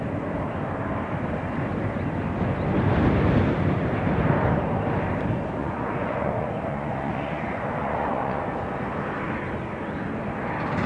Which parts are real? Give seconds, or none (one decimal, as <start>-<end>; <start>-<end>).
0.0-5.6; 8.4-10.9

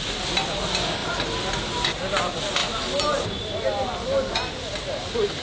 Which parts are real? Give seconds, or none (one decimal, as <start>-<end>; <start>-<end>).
0.0-5.4

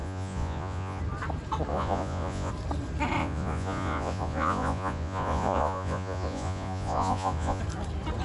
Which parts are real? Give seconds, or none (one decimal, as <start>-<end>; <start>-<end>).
1.0-1.7; 2.5-3.2; 7.6-8.2

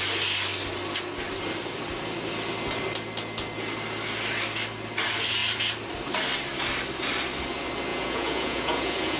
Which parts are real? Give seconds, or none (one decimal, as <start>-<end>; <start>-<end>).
0.0-7.9

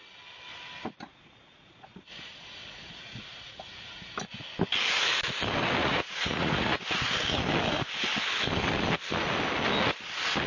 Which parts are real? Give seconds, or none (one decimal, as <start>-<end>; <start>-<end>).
0.0-1.1; 4.1-5.8; 6.8-10.5

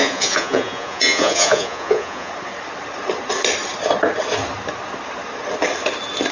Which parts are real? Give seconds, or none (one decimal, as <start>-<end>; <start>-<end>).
2.3-6.3

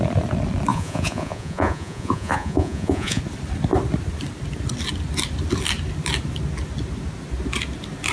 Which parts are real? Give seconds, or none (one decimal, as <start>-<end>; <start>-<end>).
0.0-0.7; 3.2-8.1

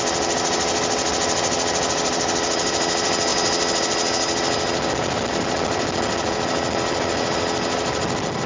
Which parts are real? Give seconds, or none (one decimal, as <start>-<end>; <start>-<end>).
0.0-8.5